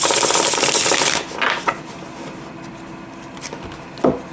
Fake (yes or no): no